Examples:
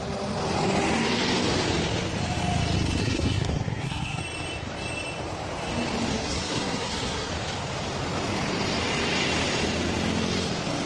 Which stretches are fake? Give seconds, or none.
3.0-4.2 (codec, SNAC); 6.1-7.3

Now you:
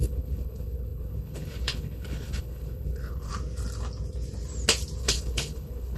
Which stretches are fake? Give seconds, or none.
0.0-3.3 (codec, HILCodec); 5.0-6.0

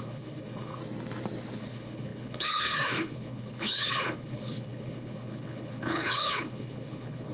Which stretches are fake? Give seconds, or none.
0.0-0.8 (codec, HILCodec); 1.6-7.3

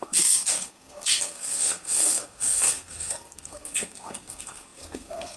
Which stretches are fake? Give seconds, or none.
0.0-5.4 (codec, SNAC)

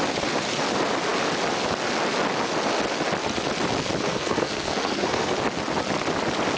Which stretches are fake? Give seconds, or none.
4.1-5.3 (codec, SNAC)

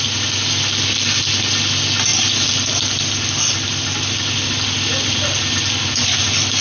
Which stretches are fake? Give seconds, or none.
none

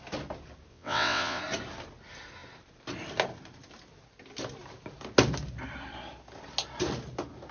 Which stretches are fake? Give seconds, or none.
0.7-1.4 (vocoder, WaveNeXt)